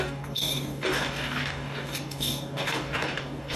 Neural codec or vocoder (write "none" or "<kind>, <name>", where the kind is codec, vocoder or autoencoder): codec, DAC